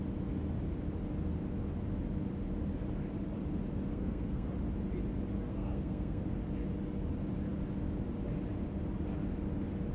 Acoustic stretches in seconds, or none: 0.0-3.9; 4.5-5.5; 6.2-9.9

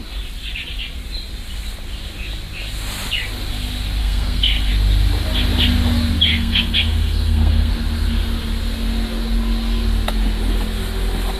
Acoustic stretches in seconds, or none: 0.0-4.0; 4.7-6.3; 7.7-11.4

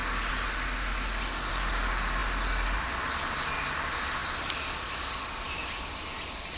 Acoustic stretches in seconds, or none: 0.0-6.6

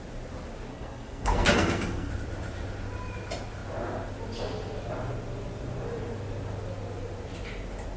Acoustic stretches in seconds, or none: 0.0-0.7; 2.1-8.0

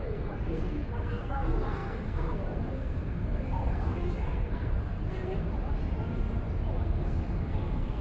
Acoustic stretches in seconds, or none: 5.5-6.8